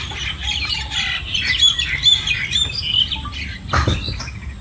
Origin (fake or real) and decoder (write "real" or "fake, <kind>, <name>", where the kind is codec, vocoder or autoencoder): real